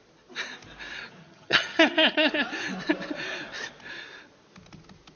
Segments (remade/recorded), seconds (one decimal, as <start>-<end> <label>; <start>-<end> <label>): 0.0-1.2 recorded; 1.2-2.3 remade; 2.3-5.2 recorded